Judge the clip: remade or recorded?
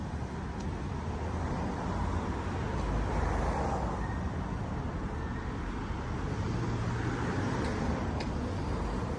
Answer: recorded